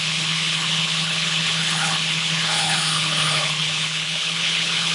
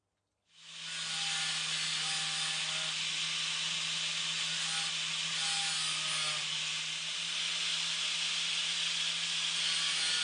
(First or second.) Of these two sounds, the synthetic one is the first